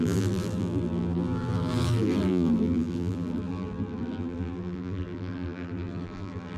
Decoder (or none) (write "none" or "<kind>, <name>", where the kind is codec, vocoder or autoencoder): vocoder, BigVGAN v2